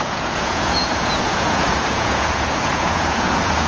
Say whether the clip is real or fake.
fake